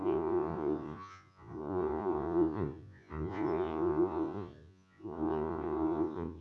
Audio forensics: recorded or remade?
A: remade